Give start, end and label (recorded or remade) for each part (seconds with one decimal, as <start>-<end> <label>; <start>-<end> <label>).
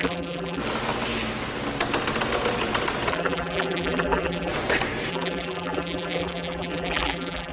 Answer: 0.0-0.6 remade; 0.6-3.1 recorded; 3.1-4.5 remade; 4.5-5.1 recorded; 5.1-7.5 remade